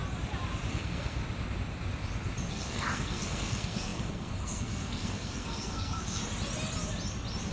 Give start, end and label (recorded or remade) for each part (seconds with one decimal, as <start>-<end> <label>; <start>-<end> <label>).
0.0-0.7 recorded; 0.7-1.2 remade; 1.2-2.5 recorded; 2.5-6.2 remade; 6.2-7.5 recorded